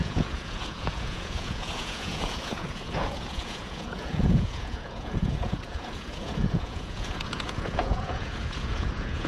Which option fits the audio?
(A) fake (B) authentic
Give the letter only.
A